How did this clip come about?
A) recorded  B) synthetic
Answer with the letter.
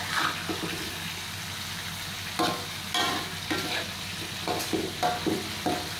A